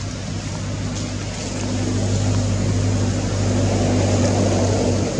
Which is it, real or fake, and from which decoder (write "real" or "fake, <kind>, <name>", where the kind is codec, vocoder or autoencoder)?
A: real